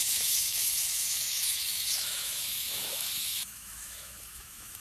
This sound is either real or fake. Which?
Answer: fake